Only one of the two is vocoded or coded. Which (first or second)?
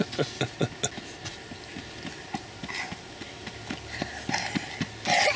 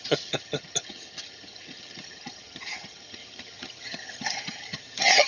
second